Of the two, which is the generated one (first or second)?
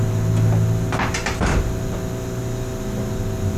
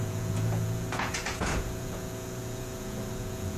second